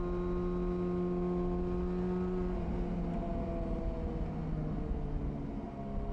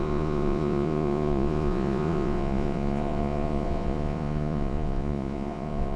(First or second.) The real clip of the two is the first